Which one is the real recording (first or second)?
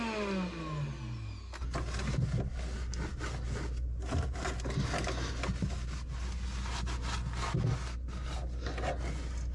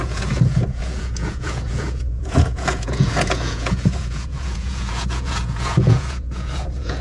first